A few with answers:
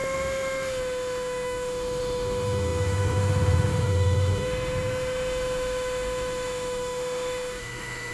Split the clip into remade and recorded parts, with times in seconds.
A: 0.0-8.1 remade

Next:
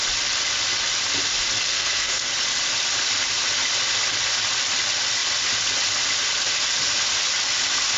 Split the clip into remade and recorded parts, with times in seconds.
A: 0.0-1.7 recorded; 1.7-2.3 remade; 2.3-8.0 recorded

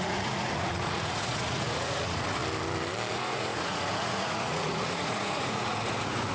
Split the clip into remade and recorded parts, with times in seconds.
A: 0.0-2.4 remade; 2.4-3.1 recorded; 3.1-6.3 remade

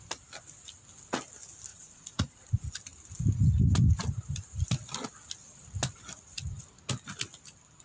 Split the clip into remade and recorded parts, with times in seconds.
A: 0.0-1.7 recorded; 1.7-2.5 remade; 2.5-7.8 recorded

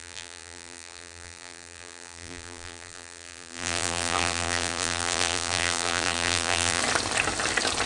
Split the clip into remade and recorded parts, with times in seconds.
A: 0.0-6.8 remade; 6.8-7.9 recorded

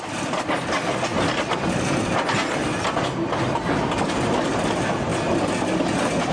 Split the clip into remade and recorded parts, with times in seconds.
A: 0.0-6.3 recorded